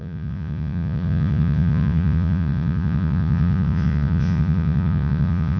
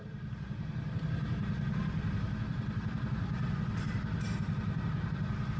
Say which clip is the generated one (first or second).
first